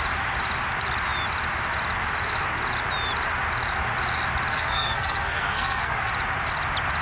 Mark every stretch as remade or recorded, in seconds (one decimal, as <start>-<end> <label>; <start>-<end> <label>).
0.0-4.5 recorded; 4.5-6.1 remade; 6.1-7.0 recorded